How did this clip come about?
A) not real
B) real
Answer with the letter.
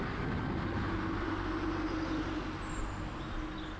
B